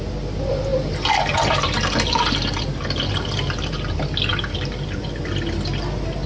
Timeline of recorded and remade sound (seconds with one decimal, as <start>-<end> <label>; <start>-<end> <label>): 0.0-6.3 recorded